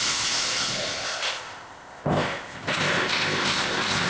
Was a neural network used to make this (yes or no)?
yes